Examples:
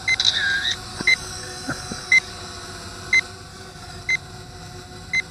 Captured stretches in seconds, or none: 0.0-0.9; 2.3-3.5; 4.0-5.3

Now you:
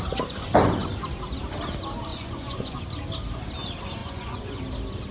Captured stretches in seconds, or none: 0.0-2.1; 2.8-4.0; 4.6-5.1

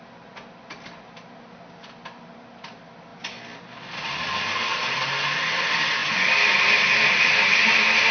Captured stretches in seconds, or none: 0.0-8.1